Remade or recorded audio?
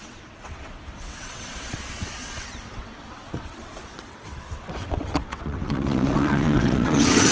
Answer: remade